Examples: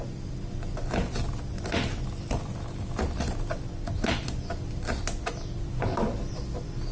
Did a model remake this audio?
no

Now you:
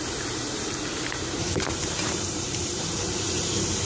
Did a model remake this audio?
yes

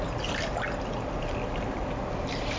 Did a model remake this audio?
no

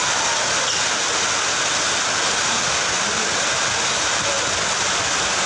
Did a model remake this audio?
no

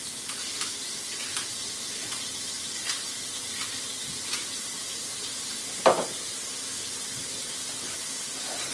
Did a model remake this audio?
no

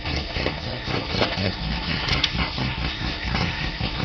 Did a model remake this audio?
yes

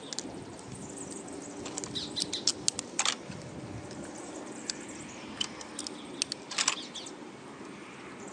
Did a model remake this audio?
no